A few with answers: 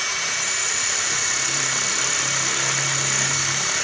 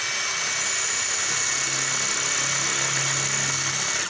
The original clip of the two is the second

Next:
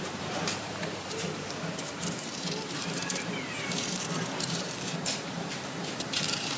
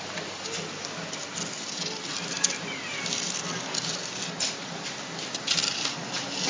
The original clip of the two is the second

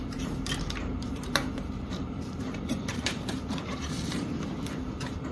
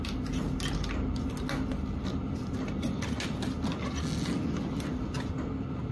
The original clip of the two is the second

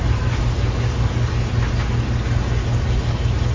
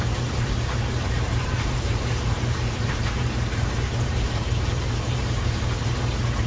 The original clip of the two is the first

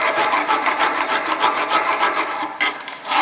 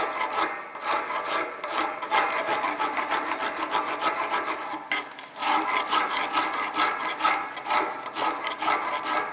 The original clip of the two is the second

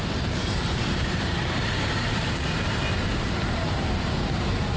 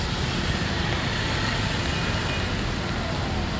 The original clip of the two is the second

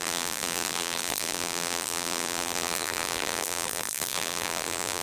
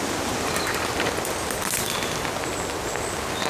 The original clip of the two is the second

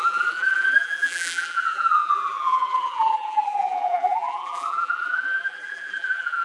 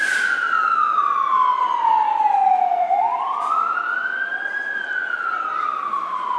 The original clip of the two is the second